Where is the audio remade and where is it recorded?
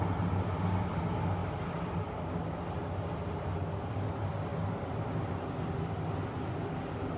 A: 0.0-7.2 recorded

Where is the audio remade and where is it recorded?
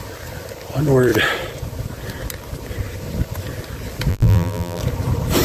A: 0.0-4.1 recorded; 4.1-4.8 remade; 4.8-5.4 recorded